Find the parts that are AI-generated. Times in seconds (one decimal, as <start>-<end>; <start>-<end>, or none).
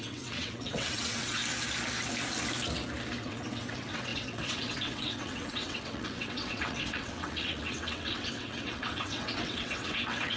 0.0-1.4; 3.2-10.4